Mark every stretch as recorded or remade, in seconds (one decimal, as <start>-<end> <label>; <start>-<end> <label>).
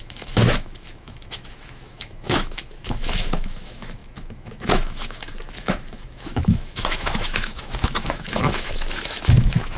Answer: 0.0-9.8 remade